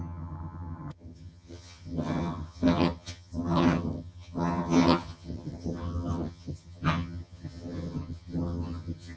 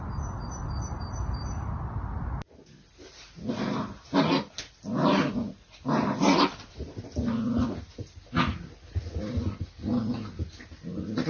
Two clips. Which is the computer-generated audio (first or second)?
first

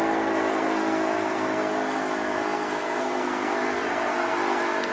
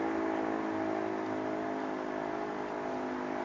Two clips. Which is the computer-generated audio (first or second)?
first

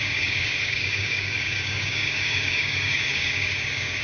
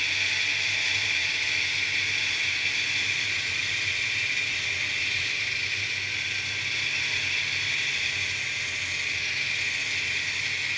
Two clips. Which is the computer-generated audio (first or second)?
first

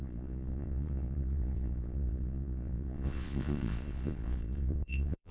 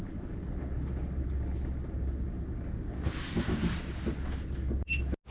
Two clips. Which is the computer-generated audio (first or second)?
first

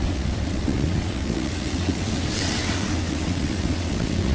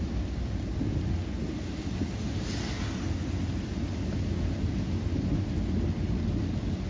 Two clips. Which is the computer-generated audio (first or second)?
first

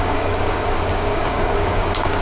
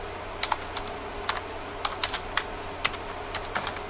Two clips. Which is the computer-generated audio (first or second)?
first